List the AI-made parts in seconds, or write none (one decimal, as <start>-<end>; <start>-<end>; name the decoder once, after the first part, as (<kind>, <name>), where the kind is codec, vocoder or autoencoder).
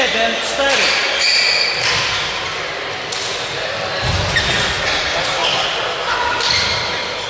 none